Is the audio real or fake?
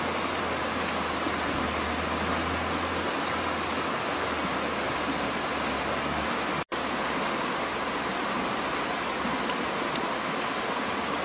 real